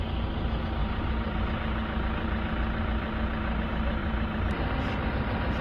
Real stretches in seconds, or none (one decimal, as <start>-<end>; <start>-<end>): 0.0-0.8; 1.4-5.6